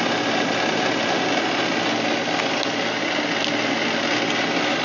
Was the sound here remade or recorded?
recorded